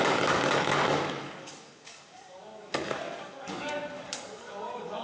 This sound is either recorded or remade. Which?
remade